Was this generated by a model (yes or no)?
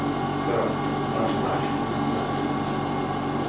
no